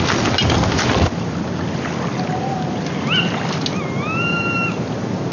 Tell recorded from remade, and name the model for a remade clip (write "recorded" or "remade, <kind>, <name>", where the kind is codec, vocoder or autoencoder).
recorded